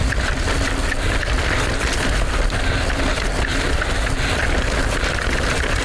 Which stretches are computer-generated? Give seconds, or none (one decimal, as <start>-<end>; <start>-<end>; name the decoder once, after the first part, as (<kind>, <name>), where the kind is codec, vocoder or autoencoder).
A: none